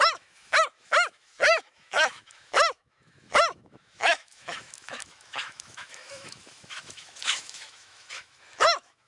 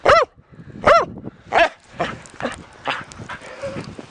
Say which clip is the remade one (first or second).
first